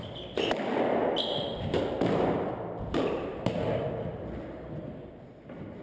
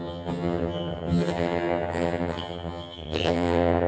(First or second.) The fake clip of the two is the second